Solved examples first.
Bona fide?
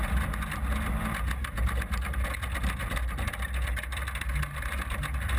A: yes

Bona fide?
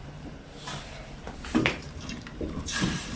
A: no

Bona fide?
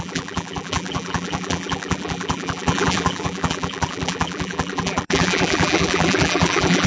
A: no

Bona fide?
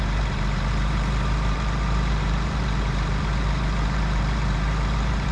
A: no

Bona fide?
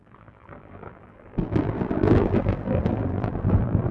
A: no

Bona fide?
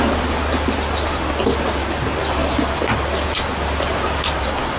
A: yes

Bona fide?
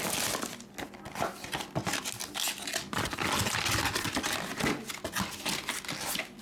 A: yes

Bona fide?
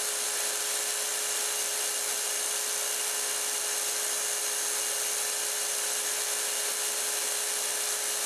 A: yes